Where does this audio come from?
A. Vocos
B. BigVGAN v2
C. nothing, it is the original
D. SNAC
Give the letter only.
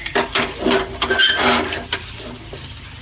C